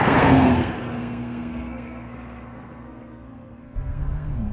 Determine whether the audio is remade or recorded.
remade